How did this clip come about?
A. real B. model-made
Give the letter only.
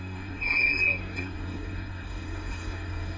B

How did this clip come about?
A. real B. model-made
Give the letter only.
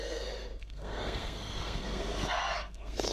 B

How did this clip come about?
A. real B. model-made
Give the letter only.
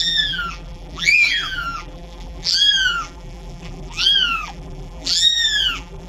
B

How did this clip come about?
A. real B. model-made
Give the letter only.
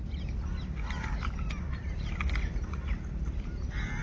A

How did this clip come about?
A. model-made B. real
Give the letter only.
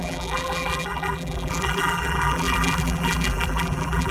A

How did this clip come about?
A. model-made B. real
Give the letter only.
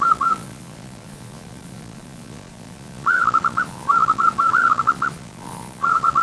A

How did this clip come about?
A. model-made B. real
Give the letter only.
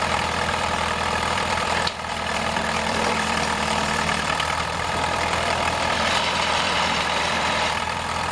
A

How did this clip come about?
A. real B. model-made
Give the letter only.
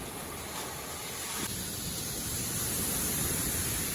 B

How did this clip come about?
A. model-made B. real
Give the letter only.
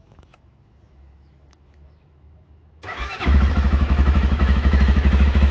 A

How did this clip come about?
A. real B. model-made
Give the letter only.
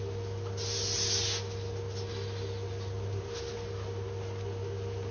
A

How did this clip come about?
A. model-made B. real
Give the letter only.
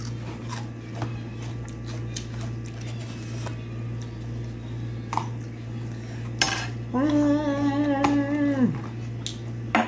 B